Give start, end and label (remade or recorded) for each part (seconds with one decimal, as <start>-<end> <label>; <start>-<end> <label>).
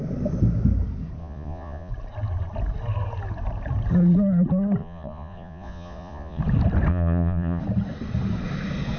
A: 0.0-1.2 recorded; 1.2-1.9 remade; 1.9-4.8 recorded; 4.8-6.4 remade; 6.4-6.9 recorded; 6.9-7.6 remade; 7.6-9.0 recorded